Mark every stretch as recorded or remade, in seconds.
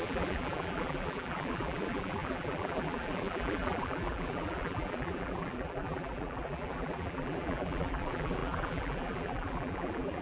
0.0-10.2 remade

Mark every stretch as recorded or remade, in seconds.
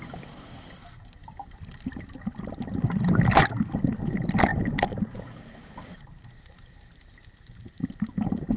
0.0-4.5 recorded; 4.5-7.0 remade; 7.0-8.6 recorded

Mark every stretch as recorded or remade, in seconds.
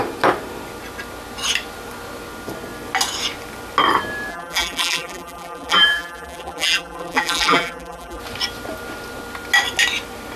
0.0-4.3 recorded; 4.3-8.2 remade; 8.2-10.4 recorded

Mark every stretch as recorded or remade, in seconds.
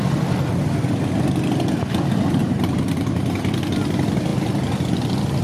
0.0-2.4 recorded; 2.4-2.9 remade; 2.9-5.4 recorded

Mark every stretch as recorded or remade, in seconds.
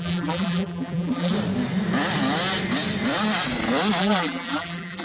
0.0-1.3 remade; 1.3-4.0 recorded; 4.0-5.0 remade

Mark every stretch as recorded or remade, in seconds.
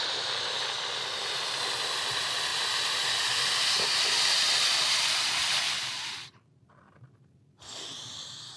0.0-8.6 remade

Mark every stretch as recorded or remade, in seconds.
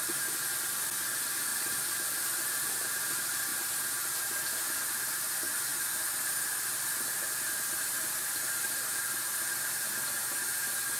0.0-1.5 recorded; 1.5-2.2 remade; 2.2-11.0 recorded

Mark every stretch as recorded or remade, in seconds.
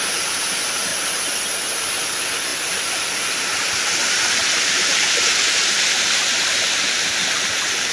0.0-0.9 remade; 0.9-1.8 recorded; 1.8-7.9 remade